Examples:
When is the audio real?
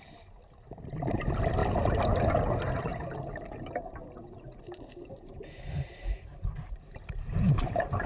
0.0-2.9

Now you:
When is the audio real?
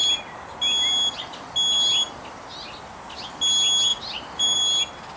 0.0-3.9; 4.6-5.2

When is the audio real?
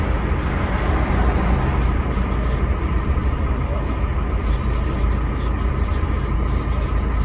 0.0-7.2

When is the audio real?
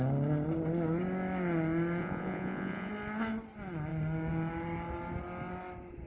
0.0-2.0; 2.9-6.1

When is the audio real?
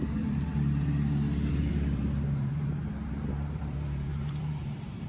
0.5-1.5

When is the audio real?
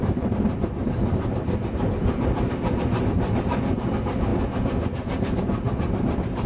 0.0-6.5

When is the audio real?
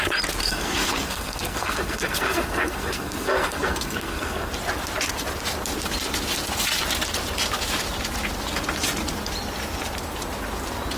0.0-0.4; 4.5-11.0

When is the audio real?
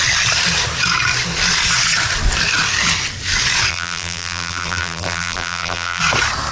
0.0-3.7; 6.0-6.5